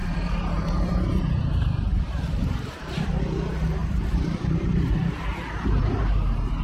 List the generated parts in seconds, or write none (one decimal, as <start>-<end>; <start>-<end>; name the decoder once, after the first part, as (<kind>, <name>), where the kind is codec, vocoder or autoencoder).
0.0-3.2 (vocoder, BigVGAN v2); 3.8-5.0